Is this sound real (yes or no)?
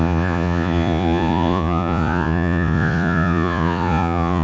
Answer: no